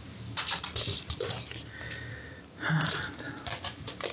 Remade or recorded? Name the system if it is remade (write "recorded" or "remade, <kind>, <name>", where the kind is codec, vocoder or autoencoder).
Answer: remade, vocoder, BigVGAN v2